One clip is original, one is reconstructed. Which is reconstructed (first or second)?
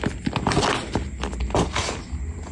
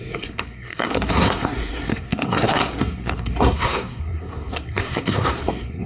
second